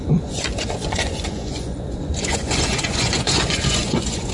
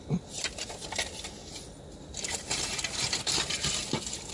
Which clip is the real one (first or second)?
second